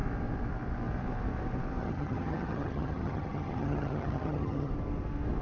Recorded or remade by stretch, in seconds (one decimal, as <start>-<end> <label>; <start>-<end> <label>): 0.0-1.8 recorded; 1.8-4.7 remade; 4.7-5.4 recorded